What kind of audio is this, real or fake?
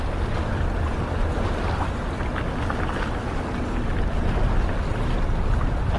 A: real